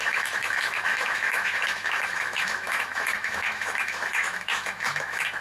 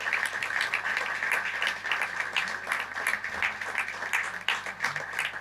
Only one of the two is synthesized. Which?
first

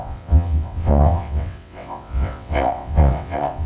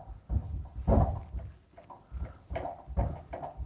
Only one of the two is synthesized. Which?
first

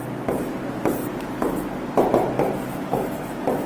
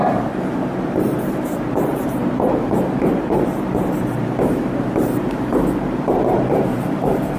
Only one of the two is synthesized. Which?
second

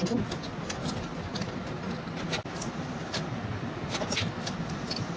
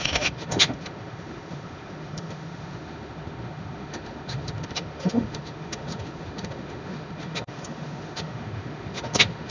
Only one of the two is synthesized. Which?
second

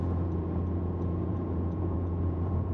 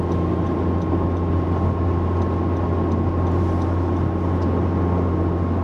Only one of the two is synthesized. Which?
first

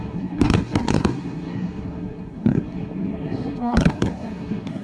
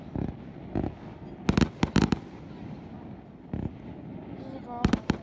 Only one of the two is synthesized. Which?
first